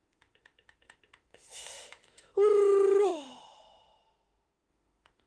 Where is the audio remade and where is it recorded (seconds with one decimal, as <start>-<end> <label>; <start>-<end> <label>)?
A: 0.0-5.3 remade